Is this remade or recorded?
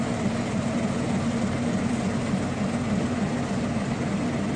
recorded